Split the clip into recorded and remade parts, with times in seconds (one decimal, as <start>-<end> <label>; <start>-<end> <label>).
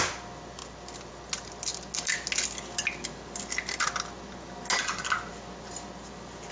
0.0-6.5 recorded